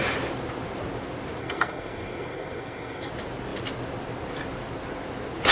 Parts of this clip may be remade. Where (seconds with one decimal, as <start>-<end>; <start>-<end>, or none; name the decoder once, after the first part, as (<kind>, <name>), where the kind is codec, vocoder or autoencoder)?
1.4-3.1 (codec, SNAC)